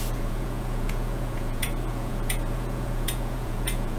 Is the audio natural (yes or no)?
no